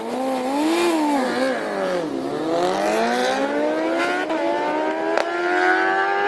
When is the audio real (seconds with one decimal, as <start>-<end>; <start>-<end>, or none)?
0.0-6.3